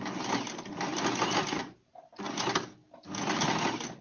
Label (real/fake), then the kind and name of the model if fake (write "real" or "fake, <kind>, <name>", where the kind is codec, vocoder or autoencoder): real